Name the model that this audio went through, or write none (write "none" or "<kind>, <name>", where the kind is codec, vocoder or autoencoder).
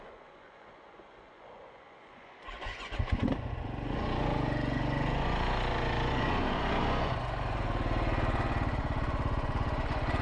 vocoder, Vocos